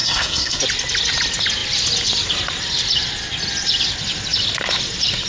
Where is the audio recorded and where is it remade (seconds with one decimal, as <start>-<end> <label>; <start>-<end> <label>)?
0.0-0.6 remade; 0.6-5.3 recorded